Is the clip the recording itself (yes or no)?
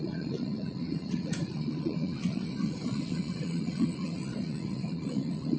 no